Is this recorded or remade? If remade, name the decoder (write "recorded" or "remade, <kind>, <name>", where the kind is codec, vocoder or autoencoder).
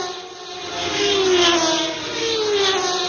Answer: recorded